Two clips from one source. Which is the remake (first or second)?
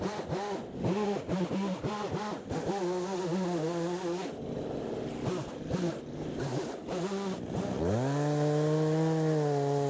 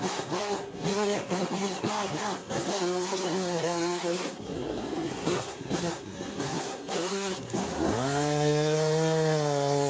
second